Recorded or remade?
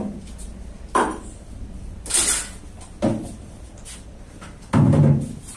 recorded